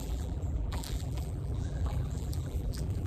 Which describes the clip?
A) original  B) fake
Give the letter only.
B